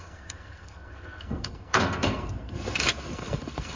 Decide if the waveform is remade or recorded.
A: remade